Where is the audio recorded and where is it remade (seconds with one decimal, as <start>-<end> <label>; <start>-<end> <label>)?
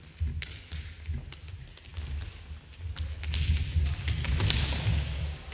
0.0-5.5 recorded